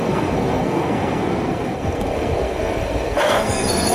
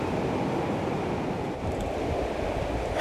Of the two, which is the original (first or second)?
second